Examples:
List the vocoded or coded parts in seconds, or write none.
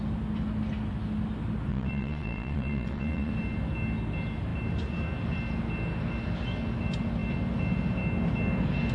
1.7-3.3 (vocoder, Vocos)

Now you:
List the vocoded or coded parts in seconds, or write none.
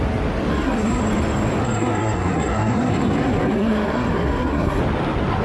0.5-1.0 (codec, SNAC); 1.6-4.8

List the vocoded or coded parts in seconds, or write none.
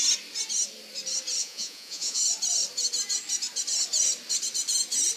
1.4-2.2 (vocoder, Vocos)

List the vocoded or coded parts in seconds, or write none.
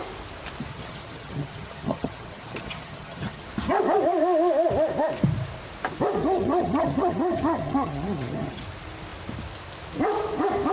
0.7-3.4 (vocoder, HiFi-GAN); 6.2-8.6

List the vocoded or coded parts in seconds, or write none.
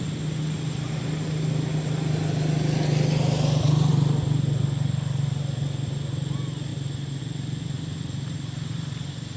none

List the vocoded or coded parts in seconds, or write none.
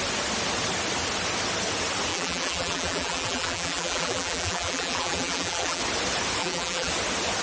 2.1-5.8 (vocoder, BigVGAN v2); 6.4-6.9